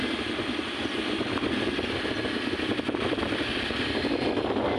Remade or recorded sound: recorded